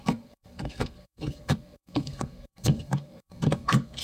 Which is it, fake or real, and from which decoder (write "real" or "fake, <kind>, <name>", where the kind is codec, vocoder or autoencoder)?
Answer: fake, codec, SNAC